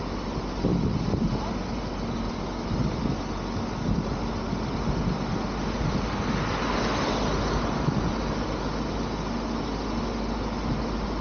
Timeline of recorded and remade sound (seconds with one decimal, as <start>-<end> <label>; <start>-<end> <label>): 0.0-0.7 recorded; 0.7-1.3 remade; 1.3-11.2 recorded